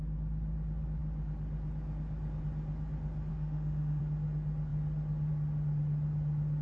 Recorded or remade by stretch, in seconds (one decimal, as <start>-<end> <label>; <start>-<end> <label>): 0.0-3.3 recorded; 3.3-4.0 remade; 4.0-6.6 recorded

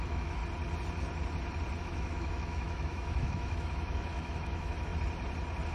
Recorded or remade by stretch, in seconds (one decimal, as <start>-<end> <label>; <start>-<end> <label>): 0.0-0.4 remade; 0.4-1.8 recorded; 1.8-4.9 remade; 4.9-5.7 recorded

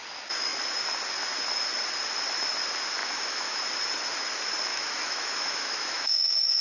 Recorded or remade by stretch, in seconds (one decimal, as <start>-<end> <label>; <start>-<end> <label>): 0.0-3.0 recorded; 3.0-3.6 remade; 3.6-4.7 recorded; 4.7-6.6 remade

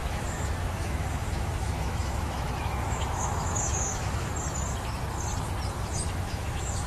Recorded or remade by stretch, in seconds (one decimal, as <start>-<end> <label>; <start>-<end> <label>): 0.0-4.3 remade; 4.3-5.7 recorded; 5.7-6.9 remade